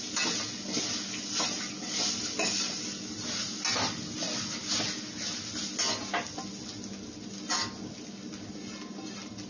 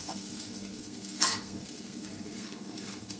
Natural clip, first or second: first